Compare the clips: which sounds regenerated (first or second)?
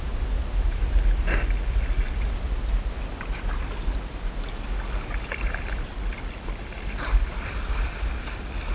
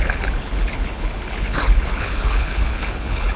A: second